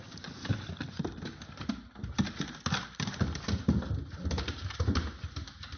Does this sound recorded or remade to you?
recorded